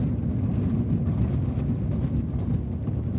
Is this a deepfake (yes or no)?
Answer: no